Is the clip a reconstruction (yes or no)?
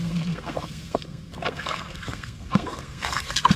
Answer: yes